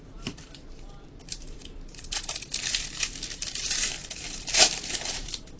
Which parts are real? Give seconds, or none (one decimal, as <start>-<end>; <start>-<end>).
none